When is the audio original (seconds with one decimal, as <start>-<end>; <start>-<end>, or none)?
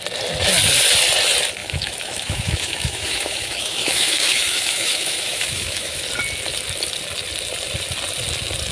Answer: 0.0-1.6; 6.0-8.7